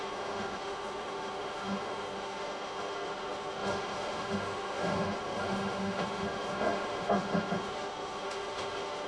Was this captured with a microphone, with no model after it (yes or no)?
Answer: no